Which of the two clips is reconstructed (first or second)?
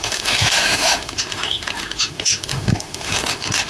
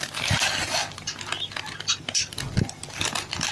first